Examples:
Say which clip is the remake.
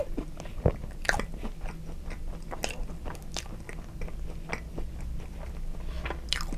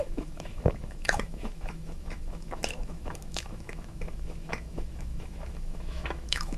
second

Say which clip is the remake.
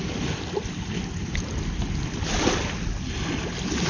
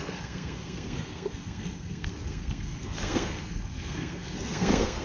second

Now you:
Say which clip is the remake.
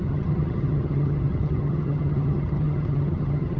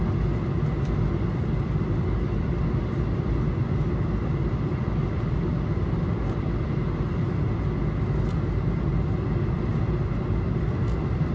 first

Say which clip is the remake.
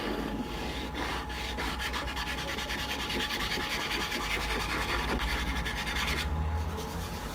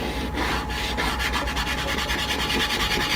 first